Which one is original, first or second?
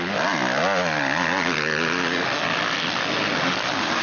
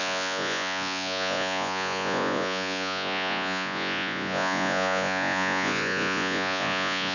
first